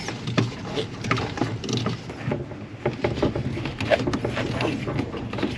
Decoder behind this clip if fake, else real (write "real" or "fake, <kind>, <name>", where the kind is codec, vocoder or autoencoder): real